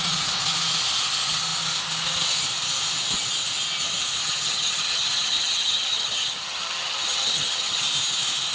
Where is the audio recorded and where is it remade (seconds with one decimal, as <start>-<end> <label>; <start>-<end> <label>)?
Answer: 0.0-4.2 recorded; 4.2-7.8 remade; 7.8-8.5 recorded